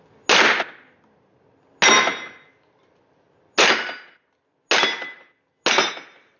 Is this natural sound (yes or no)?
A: yes